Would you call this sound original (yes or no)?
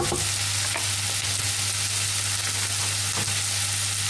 yes